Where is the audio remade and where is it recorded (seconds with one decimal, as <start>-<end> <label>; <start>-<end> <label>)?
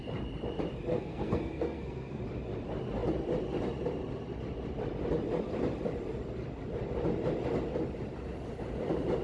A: 0.0-0.9 recorded; 0.9-2.2 remade; 2.2-9.2 recorded